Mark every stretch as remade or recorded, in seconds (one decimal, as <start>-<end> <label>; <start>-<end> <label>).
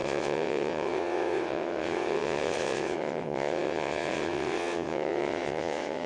0.0-6.1 remade